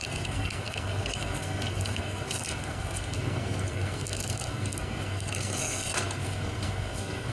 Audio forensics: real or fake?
fake